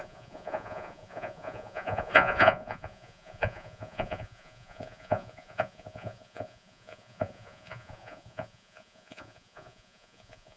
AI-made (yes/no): yes